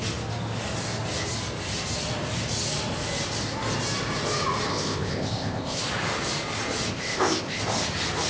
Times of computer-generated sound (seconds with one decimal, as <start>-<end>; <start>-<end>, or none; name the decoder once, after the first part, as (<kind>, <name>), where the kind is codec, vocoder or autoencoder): 4.7-5.8 (codec, ZipCodec); 6.9-7.6